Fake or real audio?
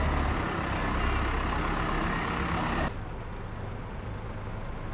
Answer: real